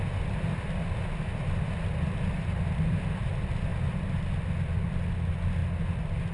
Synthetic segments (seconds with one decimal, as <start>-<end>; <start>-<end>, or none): none